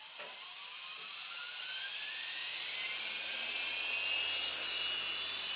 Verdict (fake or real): real